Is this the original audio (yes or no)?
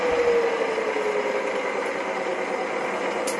yes